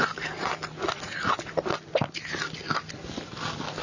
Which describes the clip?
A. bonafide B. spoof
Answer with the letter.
A